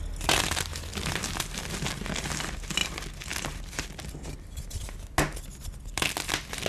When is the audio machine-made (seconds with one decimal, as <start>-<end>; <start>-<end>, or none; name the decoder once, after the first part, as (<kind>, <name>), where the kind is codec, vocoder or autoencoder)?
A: 0.9-1.6 (vocoder, BigVGAN v2)